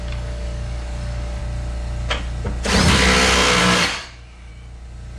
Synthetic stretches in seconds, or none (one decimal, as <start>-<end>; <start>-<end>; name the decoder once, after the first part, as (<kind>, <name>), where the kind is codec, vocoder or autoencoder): 0.0-1.4 (codec, DAC); 3.6-4.5